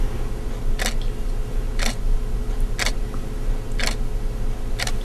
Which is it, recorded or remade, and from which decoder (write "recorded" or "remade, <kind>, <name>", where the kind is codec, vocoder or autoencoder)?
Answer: recorded